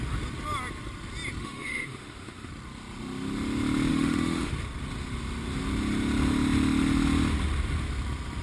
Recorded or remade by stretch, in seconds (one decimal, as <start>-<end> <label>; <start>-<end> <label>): 0.0-1.4 recorded; 1.4-2.5 remade; 2.5-3.9 recorded; 3.9-4.5 remade; 4.5-8.4 recorded

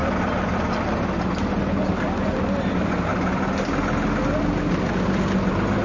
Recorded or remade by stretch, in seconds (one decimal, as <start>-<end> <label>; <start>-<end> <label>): 0.0-5.8 recorded

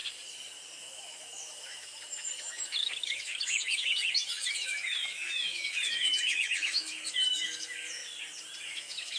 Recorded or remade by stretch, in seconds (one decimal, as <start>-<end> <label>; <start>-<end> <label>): 0.0-0.8 recorded; 0.8-8.0 remade; 8.0-8.6 recorded; 8.6-9.2 remade

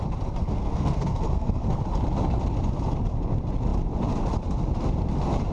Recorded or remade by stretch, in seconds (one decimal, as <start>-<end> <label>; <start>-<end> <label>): 0.0-0.4 recorded; 0.4-1.8 remade; 1.8-5.5 recorded

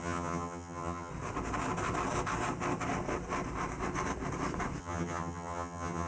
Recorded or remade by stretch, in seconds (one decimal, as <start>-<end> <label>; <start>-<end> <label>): 0.0-1.1 remade; 1.1-4.8 recorded; 4.8-6.1 remade

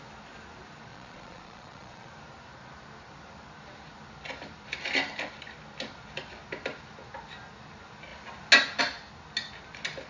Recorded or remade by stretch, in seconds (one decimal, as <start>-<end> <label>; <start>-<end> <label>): 0.0-0.9 recorded; 0.9-2.1 remade; 2.1-10.1 recorded

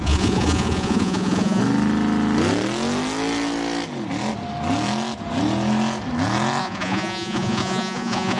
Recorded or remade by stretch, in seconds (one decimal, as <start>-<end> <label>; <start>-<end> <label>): 0.0-1.6 remade; 1.6-6.6 recorded; 6.6-8.4 remade